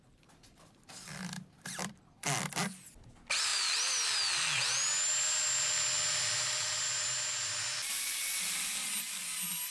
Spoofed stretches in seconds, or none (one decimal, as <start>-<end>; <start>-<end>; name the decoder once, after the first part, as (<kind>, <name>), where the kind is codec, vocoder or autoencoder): none